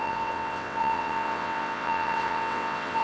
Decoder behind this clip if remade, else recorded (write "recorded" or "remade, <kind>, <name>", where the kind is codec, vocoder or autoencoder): remade, vocoder, WaveNeXt